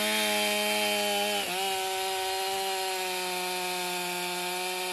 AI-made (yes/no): no